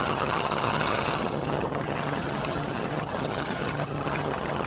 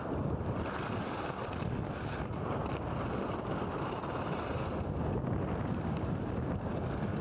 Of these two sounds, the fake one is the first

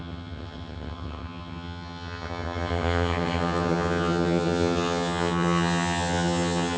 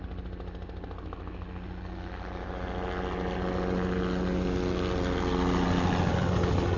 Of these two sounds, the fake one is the first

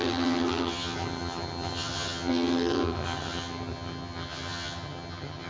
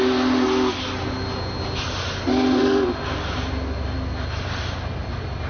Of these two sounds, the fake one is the first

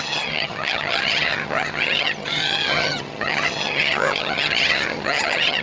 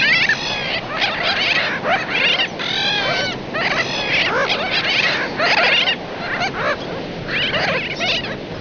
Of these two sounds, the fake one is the first